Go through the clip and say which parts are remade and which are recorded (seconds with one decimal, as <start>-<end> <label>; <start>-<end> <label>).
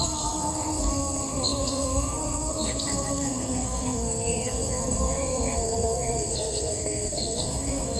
0.0-8.0 remade